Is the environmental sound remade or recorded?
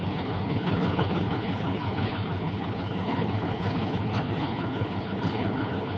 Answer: remade